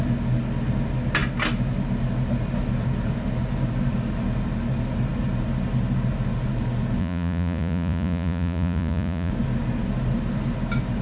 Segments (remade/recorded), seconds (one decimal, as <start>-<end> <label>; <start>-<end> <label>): 0.0-7.0 recorded; 7.0-9.3 remade; 9.3-11.0 recorded

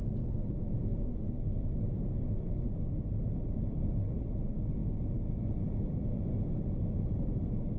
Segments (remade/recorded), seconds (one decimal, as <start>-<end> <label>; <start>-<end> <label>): 0.0-4.8 recorded; 4.8-5.4 remade; 5.4-7.8 recorded

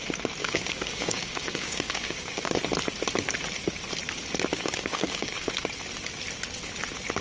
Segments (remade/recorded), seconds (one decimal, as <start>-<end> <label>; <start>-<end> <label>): 0.0-0.4 recorded; 0.4-2.5 remade; 2.5-4.5 recorded; 4.5-5.5 remade; 5.5-7.2 recorded